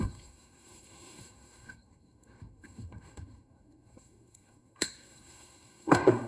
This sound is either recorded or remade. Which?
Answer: remade